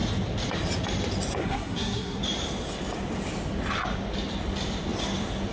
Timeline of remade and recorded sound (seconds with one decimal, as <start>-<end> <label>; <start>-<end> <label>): 0.0-1.4 recorded; 1.4-2.2 remade; 2.2-5.5 recorded